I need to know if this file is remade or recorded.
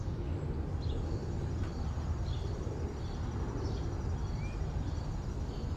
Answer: recorded